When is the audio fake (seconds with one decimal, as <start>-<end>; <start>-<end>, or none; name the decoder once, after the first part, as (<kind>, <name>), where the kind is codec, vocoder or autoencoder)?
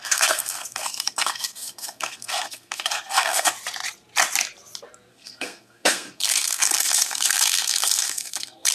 0.0-3.5 (codec, SNAC); 5.1-8.7